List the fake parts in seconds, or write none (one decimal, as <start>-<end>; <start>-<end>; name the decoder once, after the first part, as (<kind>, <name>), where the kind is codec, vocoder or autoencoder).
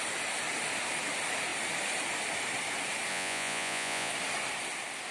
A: 3.1-4.1 (vocoder, Vocos)